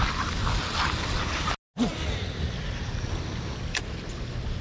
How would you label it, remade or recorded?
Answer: recorded